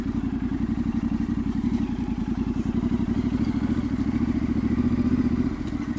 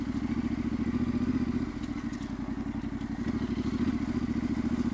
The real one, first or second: second